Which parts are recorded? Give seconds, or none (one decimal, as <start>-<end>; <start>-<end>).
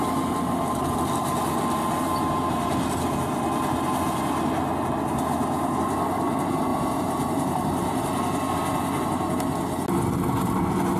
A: 0.0-11.0